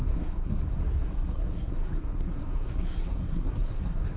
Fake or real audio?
fake